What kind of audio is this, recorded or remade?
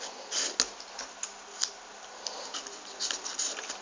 recorded